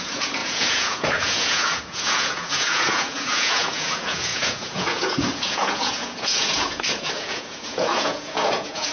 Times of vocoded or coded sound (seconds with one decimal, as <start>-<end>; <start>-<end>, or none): 0.0-8.9